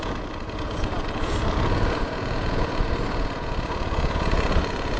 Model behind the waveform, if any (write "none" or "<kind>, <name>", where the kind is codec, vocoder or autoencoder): vocoder, Vocos